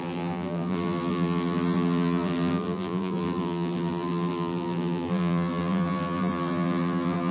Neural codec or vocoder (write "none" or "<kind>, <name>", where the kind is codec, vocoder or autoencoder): vocoder, BigVGAN v2